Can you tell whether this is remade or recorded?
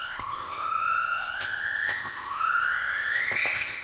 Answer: remade